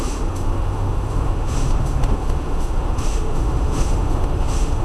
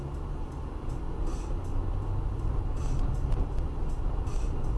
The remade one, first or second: first